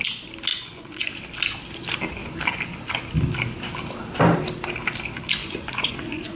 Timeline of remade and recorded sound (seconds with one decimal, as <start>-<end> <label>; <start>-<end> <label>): 0.0-0.5 recorded; 0.5-1.1 remade; 1.1-5.4 recorded; 5.4-6.4 remade